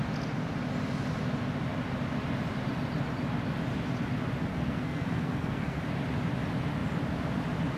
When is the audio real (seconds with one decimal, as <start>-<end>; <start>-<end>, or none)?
0.0-4.5; 5.8-7.8